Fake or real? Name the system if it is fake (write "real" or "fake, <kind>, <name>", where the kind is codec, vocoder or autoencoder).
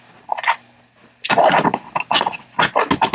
real